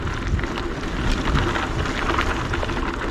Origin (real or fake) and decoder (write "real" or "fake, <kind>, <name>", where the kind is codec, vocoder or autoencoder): real